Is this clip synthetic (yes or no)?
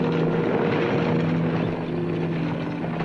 no